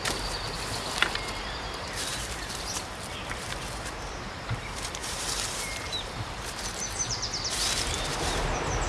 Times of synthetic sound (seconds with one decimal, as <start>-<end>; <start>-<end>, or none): 0.0-8.9